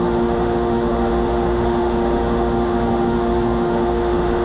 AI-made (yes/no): yes